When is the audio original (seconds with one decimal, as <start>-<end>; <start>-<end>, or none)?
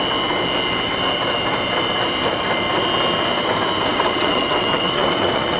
0.0-3.9